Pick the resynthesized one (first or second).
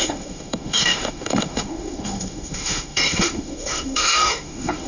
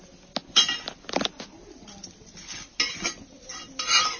first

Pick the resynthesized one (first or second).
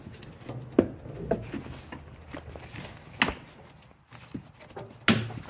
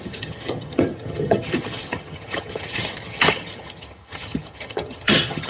second